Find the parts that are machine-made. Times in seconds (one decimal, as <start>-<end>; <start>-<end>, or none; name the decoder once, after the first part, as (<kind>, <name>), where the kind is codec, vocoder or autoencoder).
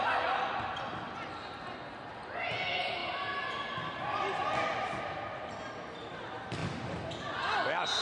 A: none